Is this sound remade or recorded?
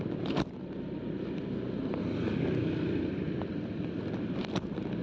recorded